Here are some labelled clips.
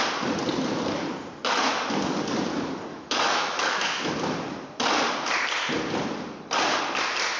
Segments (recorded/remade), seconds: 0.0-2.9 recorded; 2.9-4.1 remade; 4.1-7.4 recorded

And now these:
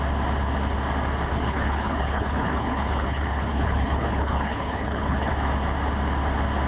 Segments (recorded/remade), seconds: 0.0-1.3 recorded; 1.3-5.3 remade; 5.3-6.7 recorded

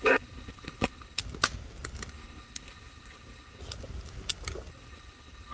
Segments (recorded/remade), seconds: 0.0-1.2 remade; 1.2-2.1 recorded; 2.1-3.6 remade; 3.6-4.7 recorded; 4.7-5.5 remade

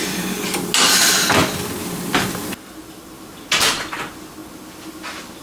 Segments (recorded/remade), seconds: 0.0-5.4 recorded